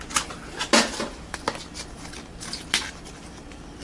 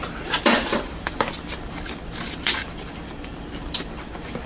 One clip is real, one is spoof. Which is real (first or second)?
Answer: first